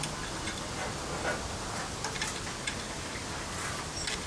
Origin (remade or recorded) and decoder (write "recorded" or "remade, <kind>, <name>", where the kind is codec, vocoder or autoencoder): recorded